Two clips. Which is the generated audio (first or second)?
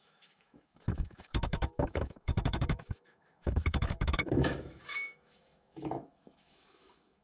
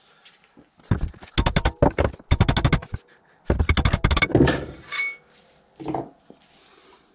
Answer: first